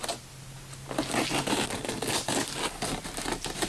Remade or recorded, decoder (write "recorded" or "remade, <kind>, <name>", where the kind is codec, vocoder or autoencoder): recorded